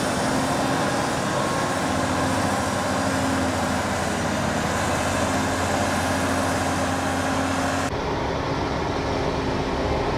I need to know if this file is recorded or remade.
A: recorded